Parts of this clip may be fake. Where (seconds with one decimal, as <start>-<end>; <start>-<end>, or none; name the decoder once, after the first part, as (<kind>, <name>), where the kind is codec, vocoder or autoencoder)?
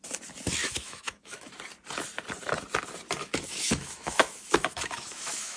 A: 0.6-1.5 (autoencoder, DAC-VAE); 3.2-5.6